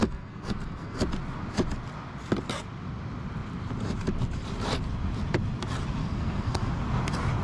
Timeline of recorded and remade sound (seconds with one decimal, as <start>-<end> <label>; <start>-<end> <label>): 0.0-1.0 remade; 1.0-6.0 recorded; 6.0-6.7 remade; 6.7-7.4 recorded